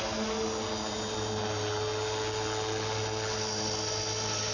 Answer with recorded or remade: recorded